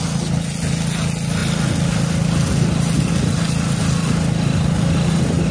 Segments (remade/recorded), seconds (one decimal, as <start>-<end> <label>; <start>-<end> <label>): 0.0-5.5 recorded